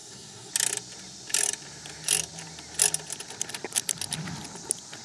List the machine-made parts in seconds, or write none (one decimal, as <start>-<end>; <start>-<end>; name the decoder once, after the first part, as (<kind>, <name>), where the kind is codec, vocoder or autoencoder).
0.0-0.5 (codec, SNAC)